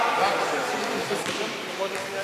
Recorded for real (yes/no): yes